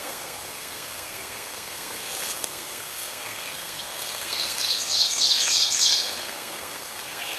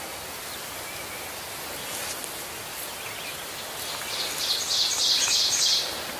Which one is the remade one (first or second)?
first